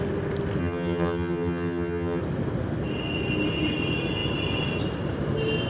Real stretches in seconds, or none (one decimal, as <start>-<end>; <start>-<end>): 0.0-0.6; 2.2-5.7